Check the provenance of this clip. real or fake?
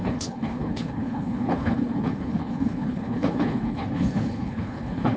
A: fake